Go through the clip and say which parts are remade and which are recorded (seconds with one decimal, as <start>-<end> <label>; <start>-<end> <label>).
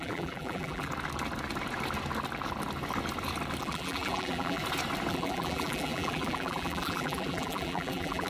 0.0-0.9 remade; 0.9-3.6 recorded; 3.6-4.6 remade; 4.6-5.1 recorded; 5.1-8.3 remade